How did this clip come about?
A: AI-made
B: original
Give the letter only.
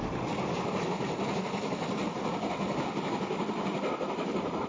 B